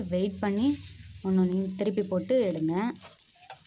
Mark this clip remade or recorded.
recorded